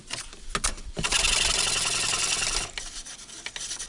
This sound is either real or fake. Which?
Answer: real